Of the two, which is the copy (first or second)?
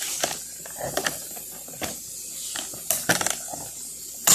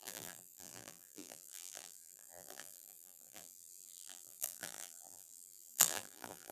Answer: second